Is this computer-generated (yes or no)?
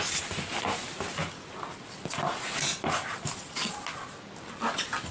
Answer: no